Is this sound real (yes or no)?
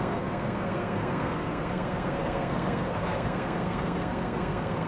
no